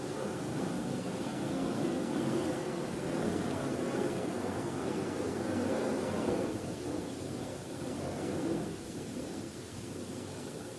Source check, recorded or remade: remade